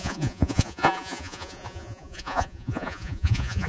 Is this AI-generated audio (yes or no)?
yes